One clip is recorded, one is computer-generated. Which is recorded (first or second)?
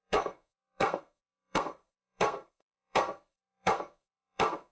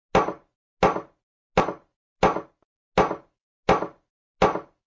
second